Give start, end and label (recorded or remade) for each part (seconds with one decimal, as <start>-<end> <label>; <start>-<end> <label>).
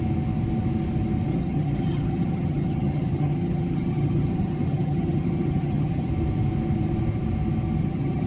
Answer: 0.0-1.3 recorded; 1.3-6.1 remade; 6.1-7.8 recorded; 7.8-8.3 remade